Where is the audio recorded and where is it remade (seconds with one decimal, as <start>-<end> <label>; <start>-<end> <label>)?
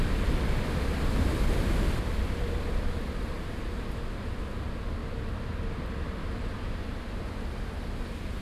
0.0-8.4 recorded